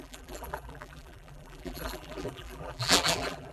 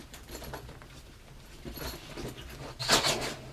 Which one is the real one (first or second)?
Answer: second